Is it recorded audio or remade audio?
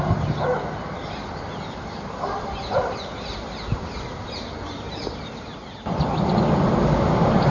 recorded